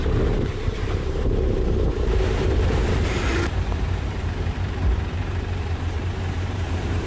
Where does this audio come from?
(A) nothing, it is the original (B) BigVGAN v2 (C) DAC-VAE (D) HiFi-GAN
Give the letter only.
B